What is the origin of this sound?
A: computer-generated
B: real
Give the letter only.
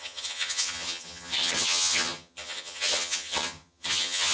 A